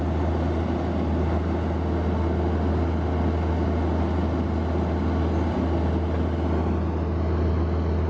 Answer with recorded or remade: recorded